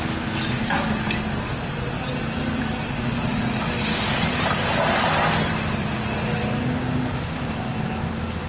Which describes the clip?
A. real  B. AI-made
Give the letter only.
A